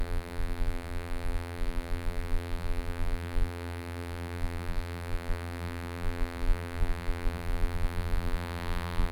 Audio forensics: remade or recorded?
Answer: remade